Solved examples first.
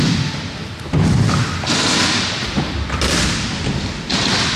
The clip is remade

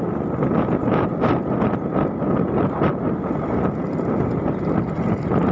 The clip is recorded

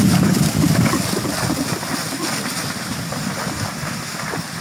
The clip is recorded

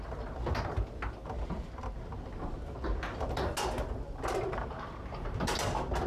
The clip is recorded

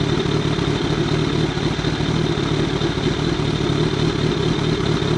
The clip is recorded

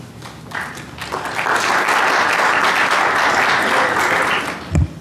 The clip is recorded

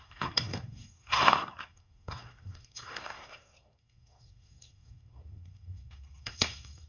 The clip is remade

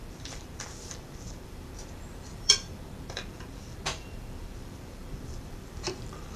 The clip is remade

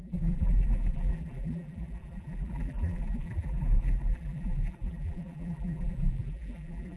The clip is remade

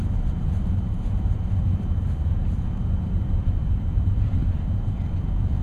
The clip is remade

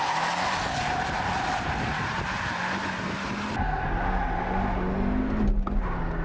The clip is recorded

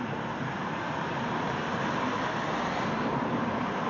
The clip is remade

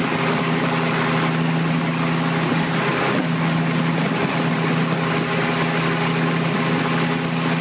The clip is recorded